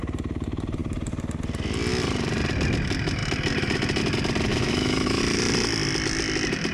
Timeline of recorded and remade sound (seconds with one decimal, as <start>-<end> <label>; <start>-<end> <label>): 0.0-4.5 recorded; 4.5-5.2 remade; 5.2-6.7 recorded